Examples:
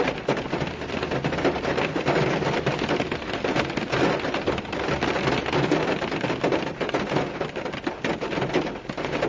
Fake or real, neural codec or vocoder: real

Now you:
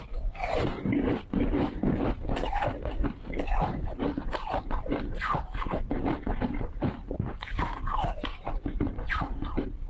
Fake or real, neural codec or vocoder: fake, vocoder, BigVGAN v2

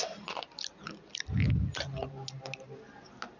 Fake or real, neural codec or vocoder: real